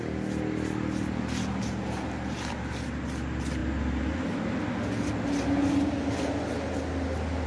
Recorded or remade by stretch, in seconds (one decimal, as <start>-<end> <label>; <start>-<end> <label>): 0.0-7.5 recorded